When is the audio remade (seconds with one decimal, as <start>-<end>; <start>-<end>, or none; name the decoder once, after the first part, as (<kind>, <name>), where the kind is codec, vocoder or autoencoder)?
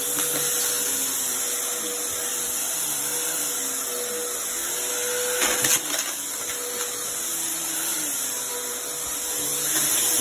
2.3-3.4 (vocoder, BigVGAN v2); 7.9-8.5